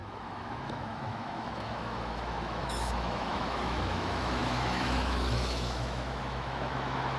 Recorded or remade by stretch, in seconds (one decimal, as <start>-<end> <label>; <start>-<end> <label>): 0.0-7.2 remade

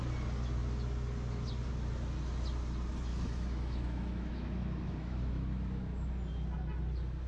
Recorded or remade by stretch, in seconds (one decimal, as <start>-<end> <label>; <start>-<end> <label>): 0.0-3.1 recorded; 3.1-6.1 remade; 6.1-7.3 recorded

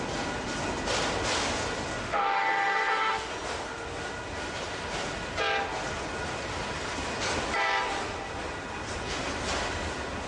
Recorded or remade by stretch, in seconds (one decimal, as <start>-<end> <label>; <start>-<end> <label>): 0.0-2.0 recorded; 2.0-3.3 remade; 3.3-10.3 recorded

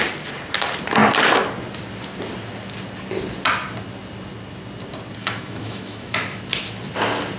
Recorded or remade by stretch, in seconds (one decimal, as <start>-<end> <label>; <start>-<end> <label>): 0.0-5.2 recorded; 5.2-6.4 remade; 6.4-7.4 recorded

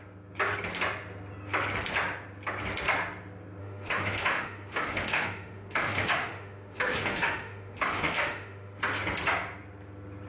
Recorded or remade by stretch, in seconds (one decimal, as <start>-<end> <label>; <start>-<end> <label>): 0.0-3.6 recorded; 3.6-8.8 remade; 8.8-10.3 recorded

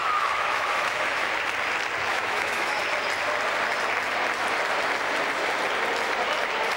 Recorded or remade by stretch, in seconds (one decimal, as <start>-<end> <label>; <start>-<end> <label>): 0.0-1.3 remade; 1.3-2.1 recorded; 2.1-2.8 remade; 2.8-6.8 recorded

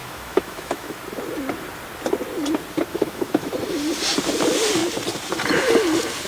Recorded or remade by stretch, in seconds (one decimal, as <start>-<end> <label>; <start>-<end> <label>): 0.0-1.0 remade; 1.0-2.9 recorded; 2.9-3.5 remade; 3.5-6.3 recorded